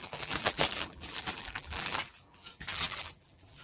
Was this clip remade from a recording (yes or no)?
yes